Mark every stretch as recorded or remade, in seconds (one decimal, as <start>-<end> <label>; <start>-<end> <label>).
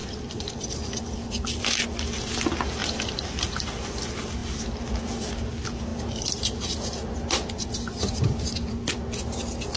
0.0-1.6 remade; 1.6-2.8 recorded; 2.8-3.6 remade; 3.6-5.9 recorded; 5.9-6.4 remade; 6.4-9.8 recorded